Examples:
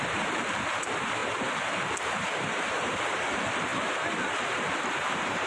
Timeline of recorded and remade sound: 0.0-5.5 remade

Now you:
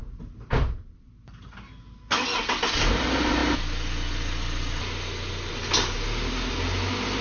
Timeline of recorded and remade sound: 0.0-7.2 recorded

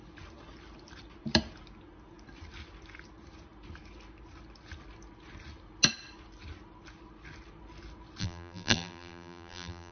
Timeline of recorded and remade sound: 0.0-8.2 recorded; 8.2-9.9 remade

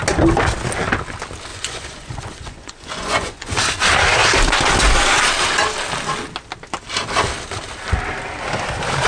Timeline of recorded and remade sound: 0.0-1.5 recorded; 1.5-3.5 remade; 3.5-9.1 recorded

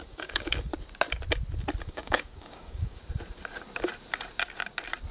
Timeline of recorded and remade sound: 0.0-0.7 remade; 0.7-1.8 recorded; 1.8-3.0 remade; 3.0-5.1 recorded

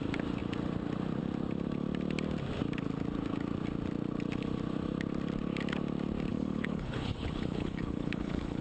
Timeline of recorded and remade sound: 0.0-6.3 recorded; 6.3-8.6 remade